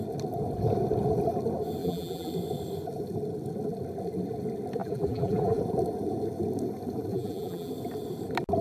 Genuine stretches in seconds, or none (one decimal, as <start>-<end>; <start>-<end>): 0.0-1.8; 2.3-4.8; 5.6-7.1; 7.7-8.6

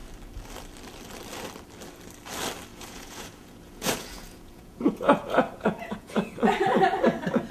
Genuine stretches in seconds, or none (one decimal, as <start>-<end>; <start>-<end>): 0.0-2.7; 6.4-7.5

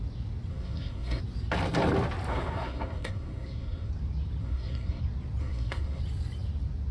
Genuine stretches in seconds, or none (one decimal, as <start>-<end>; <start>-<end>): 0.0-0.5; 1.2-2.3; 3.9-4.4; 5.0-5.4; 6.0-6.9

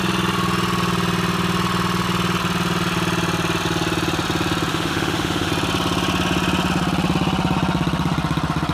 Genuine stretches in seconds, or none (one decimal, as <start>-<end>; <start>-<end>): 0.0-4.7; 5.5-8.7

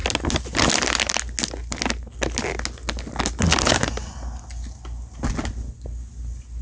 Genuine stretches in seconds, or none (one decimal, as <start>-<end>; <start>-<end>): 0.0-6.6

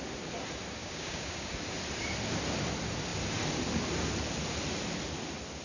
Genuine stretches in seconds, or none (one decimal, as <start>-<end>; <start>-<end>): 0.0-0.8; 1.5-5.6

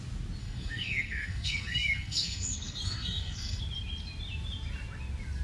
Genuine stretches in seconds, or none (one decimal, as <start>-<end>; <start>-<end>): 0.0-0.4; 3.6-5.4

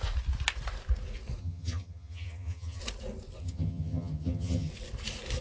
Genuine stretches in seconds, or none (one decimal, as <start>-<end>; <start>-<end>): 0.0-1.4; 2.8-3.4; 4.7-5.4